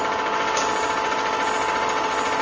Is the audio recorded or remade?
recorded